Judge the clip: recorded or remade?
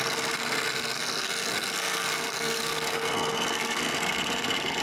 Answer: remade